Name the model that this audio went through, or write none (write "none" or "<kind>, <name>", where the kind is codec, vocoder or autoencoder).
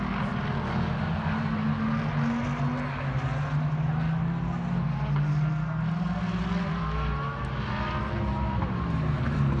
none